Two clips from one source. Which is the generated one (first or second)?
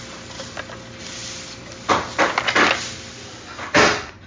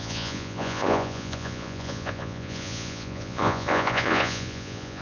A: second